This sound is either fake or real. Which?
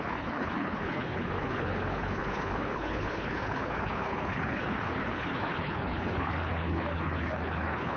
fake